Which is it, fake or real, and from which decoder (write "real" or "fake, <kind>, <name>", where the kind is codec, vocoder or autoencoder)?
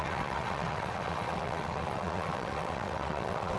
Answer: fake, vocoder, WaveNeXt